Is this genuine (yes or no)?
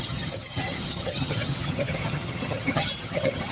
no